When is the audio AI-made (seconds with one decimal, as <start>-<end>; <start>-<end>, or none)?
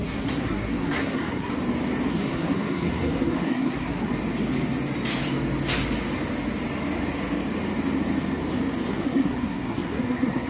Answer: 0.0-1.5; 2.1-4.1; 8.9-10.5